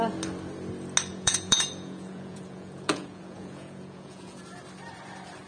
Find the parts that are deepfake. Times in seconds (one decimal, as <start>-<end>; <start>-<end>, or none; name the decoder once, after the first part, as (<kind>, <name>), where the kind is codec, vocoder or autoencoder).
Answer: 1.1-4.4 (vocoder, Vocos)